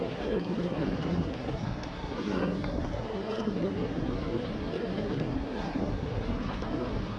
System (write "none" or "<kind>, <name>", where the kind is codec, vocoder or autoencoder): codec, SNAC